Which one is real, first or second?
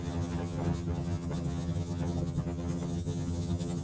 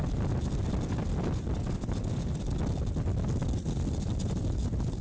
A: second